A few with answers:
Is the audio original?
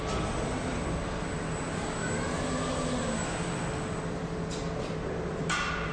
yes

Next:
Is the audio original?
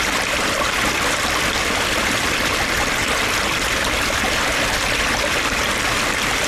no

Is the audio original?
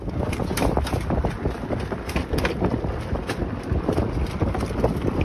yes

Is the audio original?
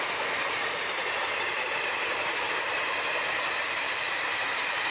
no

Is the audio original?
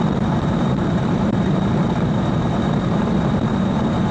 no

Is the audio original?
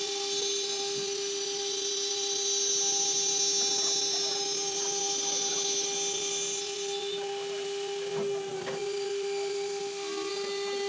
yes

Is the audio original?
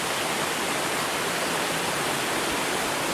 yes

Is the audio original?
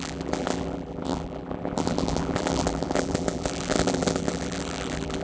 no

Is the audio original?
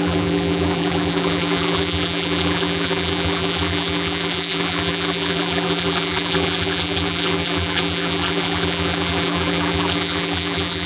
no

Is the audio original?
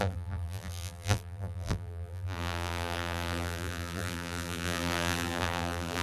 no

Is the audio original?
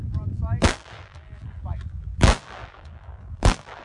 no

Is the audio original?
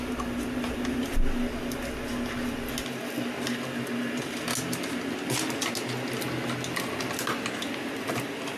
yes